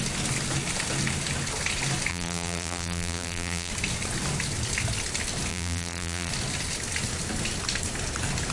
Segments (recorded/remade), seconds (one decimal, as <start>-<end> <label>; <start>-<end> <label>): 0.0-2.1 recorded; 2.1-3.7 remade; 3.7-5.5 recorded; 5.5-6.3 remade; 6.3-8.5 recorded